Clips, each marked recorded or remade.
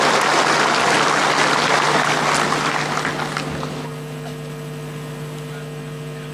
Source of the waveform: recorded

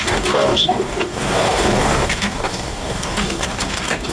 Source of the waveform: remade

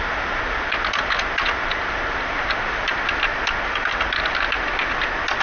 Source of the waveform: recorded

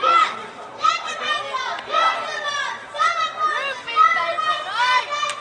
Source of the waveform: recorded